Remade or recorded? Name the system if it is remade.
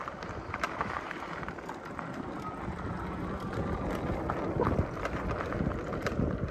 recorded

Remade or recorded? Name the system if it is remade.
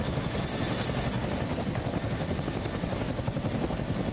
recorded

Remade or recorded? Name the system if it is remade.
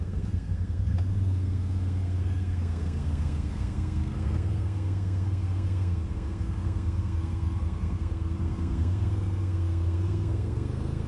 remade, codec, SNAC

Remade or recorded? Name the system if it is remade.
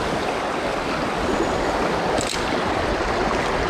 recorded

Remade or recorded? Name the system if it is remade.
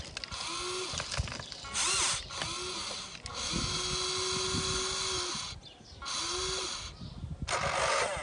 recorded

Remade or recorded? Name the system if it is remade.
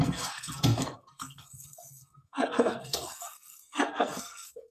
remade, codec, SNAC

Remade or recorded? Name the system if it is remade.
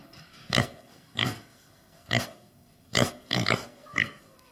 remade, codec, SNAC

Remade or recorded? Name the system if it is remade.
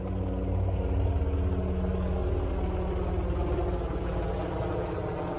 recorded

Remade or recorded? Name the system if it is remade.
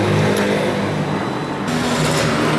recorded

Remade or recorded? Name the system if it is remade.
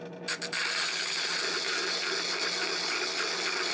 recorded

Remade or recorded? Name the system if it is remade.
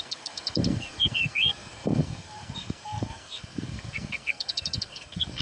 remade, codec, SNAC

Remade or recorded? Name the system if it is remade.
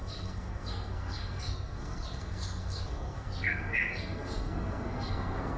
remade, codec, SNAC